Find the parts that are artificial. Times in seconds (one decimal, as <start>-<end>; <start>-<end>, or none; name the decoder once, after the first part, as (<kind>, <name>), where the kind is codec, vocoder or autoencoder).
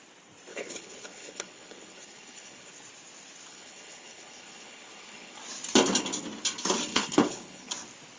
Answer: 0.5-2.7 (codec, HILCodec); 3.5-5.4; 6.9-7.7